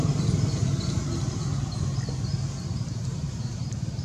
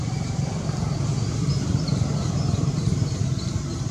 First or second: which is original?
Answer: first